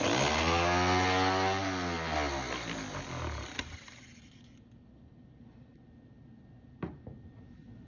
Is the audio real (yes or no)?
yes